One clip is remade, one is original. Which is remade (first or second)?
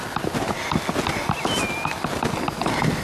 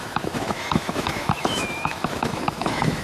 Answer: second